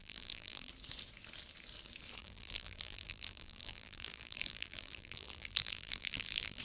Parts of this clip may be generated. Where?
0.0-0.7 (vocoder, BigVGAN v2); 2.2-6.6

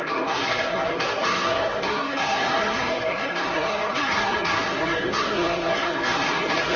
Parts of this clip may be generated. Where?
0.0-6.8 (codec, SNAC)